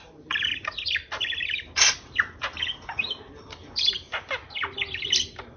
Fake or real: real